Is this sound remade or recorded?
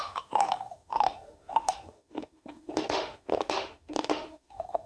remade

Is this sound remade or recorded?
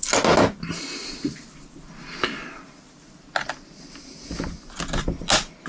recorded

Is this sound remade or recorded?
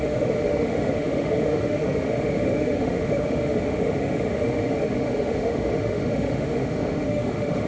remade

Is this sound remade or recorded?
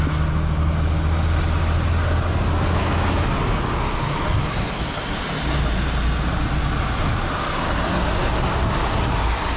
recorded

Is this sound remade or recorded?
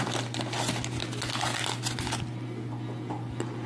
recorded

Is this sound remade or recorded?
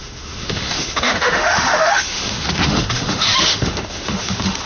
remade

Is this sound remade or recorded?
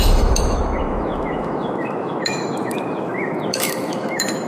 remade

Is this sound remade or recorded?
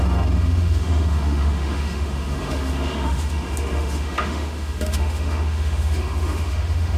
remade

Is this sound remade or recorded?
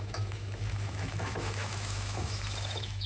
remade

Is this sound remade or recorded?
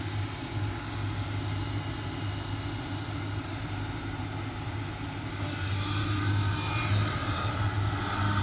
recorded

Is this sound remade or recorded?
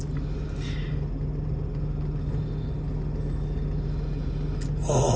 recorded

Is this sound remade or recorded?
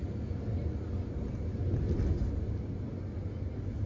recorded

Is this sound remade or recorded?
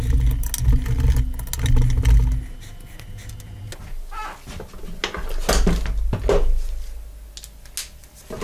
recorded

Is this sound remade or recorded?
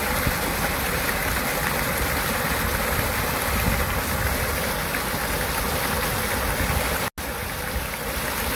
recorded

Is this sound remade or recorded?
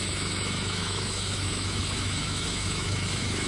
remade